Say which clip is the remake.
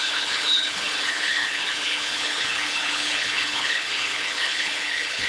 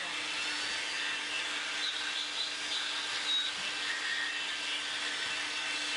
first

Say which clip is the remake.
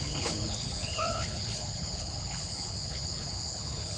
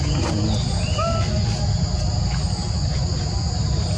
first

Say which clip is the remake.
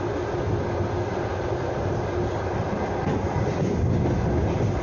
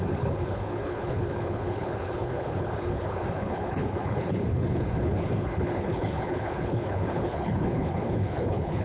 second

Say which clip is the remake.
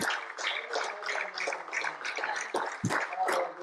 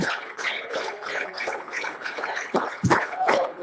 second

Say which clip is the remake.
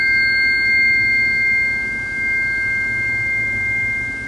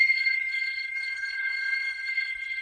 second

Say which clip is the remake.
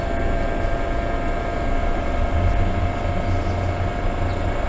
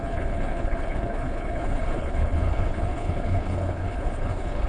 second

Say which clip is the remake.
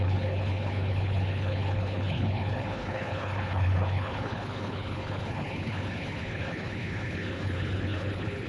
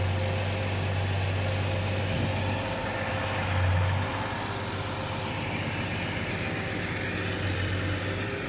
first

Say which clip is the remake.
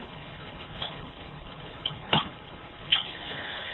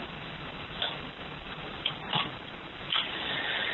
first